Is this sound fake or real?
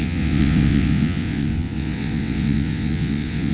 fake